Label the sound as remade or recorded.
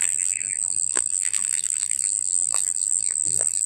remade